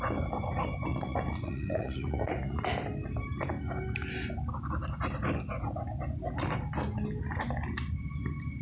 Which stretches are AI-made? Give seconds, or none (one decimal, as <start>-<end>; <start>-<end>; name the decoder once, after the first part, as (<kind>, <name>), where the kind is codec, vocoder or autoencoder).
0.9-2.6 (vocoder, Vocos)